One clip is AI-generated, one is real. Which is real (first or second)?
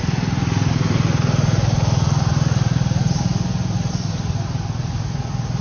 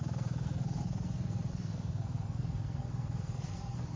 first